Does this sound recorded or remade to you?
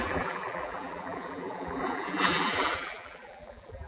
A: remade